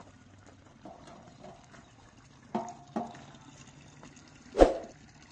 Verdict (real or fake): real